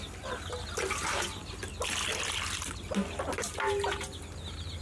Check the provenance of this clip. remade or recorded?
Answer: recorded